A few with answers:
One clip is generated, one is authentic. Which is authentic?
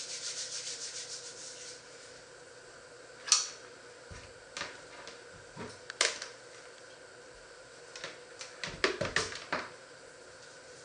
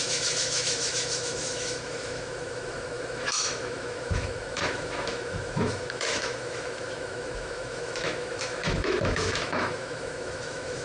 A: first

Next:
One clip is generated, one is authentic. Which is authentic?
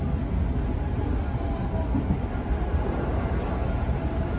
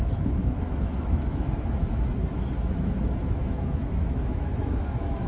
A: first